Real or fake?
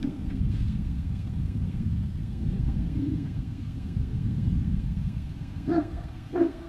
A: fake